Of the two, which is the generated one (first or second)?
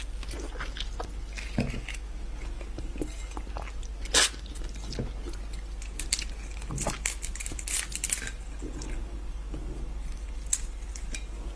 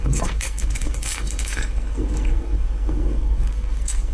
second